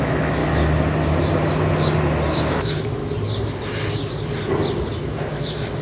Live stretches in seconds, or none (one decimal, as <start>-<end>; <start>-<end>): 0.4-2.5; 3.0-5.3